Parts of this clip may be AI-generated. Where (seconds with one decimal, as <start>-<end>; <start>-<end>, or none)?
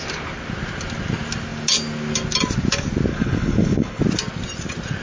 3.1-4.0